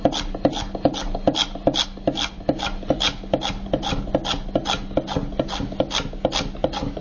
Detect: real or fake real